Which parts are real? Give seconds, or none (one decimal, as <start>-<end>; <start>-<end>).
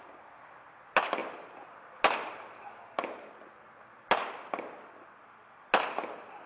0.0-6.5